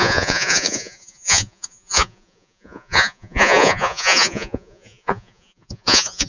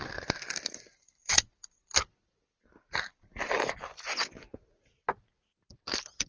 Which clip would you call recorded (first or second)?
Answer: second